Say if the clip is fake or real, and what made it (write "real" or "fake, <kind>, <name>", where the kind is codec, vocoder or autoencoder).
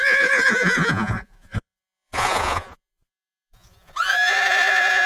fake, vocoder, Vocos